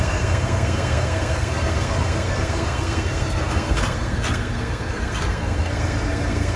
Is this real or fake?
fake